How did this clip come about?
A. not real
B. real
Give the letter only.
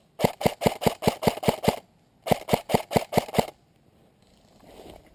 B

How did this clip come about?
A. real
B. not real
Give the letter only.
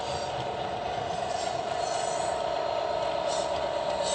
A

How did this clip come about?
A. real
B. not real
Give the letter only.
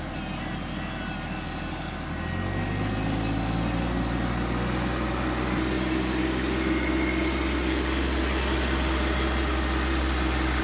A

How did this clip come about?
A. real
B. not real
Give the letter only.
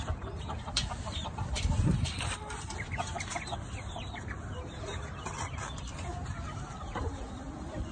B